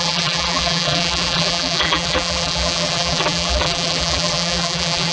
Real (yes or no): no